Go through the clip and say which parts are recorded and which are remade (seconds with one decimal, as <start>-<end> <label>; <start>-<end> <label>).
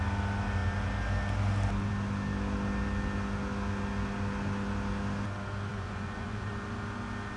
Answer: 0.0-5.7 recorded; 5.7-6.5 remade; 6.5-7.4 recorded